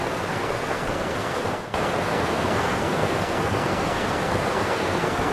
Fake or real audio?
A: fake